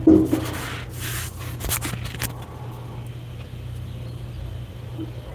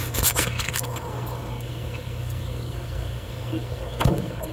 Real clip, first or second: first